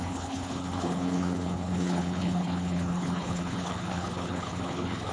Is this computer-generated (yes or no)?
yes